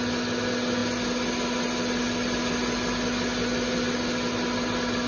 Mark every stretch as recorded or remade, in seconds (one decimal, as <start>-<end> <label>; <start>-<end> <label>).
0.0-5.1 recorded